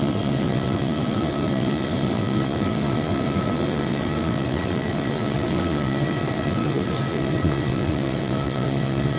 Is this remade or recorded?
remade